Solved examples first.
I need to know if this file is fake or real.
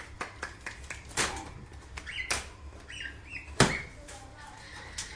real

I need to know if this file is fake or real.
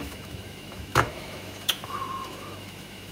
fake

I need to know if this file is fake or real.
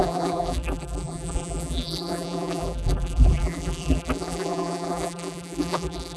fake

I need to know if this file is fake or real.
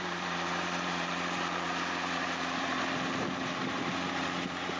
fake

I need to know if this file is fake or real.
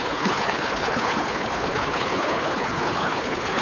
fake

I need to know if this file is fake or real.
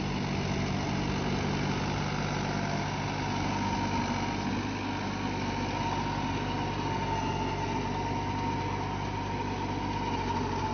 real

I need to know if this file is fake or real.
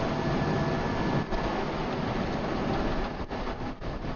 real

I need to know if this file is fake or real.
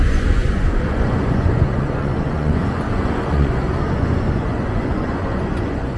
fake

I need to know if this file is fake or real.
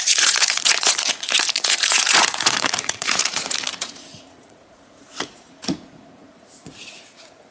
fake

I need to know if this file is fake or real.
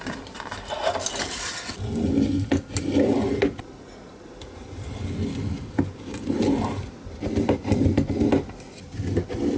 real